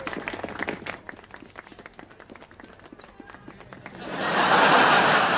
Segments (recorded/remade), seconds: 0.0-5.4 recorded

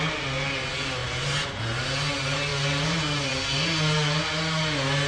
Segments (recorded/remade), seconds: 0.0-5.1 recorded

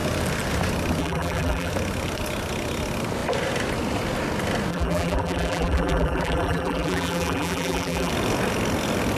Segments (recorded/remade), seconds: 0.0-1.0 recorded; 1.0-1.7 remade; 1.7-4.7 recorded; 4.7-8.1 remade; 8.1-9.2 recorded